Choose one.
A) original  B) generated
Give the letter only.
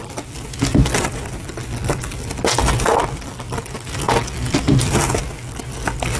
A